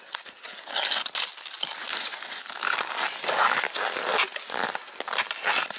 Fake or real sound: real